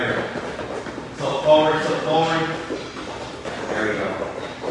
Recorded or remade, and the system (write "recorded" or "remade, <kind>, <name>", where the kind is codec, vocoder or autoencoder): recorded